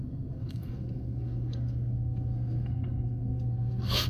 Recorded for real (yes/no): no